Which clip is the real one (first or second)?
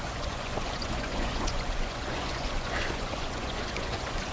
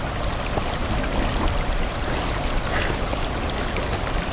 second